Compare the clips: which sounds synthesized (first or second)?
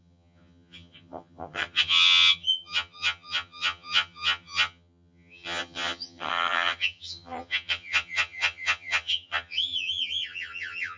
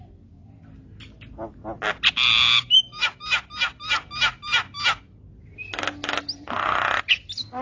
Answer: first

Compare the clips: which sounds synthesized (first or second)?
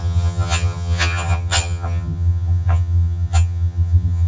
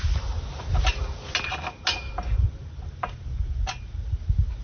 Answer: first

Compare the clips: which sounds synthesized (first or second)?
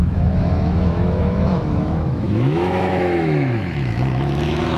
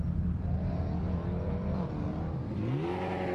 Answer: first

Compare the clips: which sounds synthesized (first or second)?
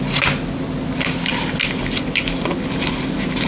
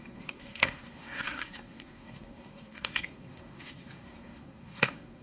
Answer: second